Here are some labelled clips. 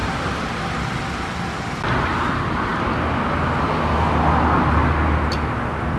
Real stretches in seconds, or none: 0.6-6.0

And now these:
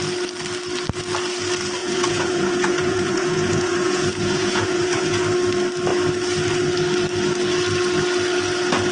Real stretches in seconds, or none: 0.0-1.8; 5.2-8.9

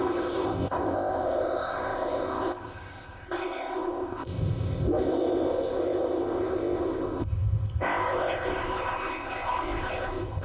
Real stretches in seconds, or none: none

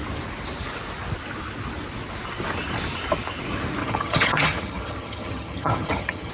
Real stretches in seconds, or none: 0.0-3.8

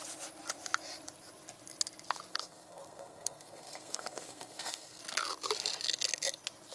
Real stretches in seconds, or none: 0.0-2.3; 5.0-6.7

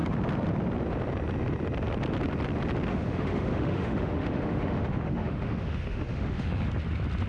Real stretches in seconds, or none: 0.0-2.9; 6.7-7.3

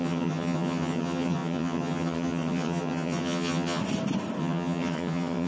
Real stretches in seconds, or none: 3.8-4.4